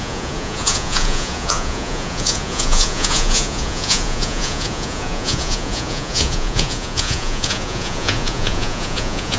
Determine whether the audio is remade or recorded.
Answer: remade